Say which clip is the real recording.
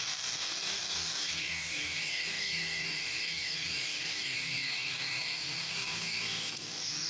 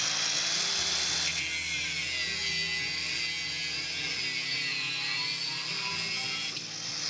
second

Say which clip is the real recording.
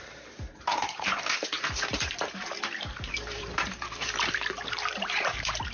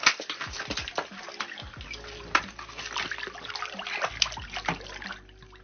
second